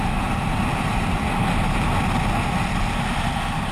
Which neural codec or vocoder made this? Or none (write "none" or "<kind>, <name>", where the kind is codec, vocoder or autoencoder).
none